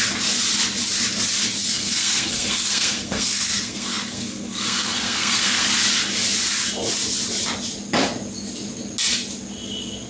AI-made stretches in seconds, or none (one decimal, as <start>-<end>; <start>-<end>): 1.7-5.7